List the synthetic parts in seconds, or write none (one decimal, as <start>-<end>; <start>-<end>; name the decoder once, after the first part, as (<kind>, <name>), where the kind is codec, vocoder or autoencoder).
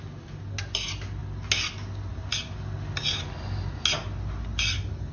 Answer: none